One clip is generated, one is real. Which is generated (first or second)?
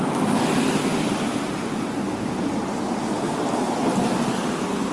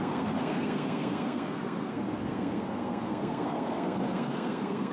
second